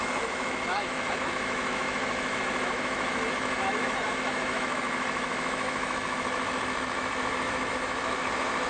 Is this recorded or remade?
remade